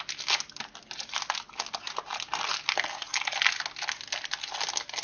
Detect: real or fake real